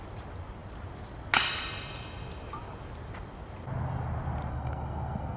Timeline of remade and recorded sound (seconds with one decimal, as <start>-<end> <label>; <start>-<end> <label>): 0.0-4.5 recorded; 4.5-5.4 remade